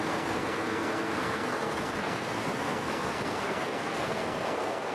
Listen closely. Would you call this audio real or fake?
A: fake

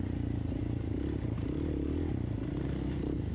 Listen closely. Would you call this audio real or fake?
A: fake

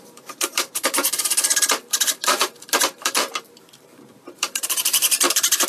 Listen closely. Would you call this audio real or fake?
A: fake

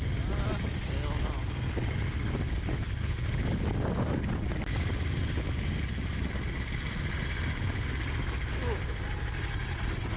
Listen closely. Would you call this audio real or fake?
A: real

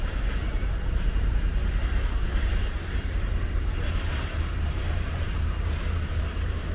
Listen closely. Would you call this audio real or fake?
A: fake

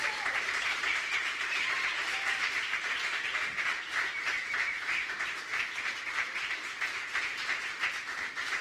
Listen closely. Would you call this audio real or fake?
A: fake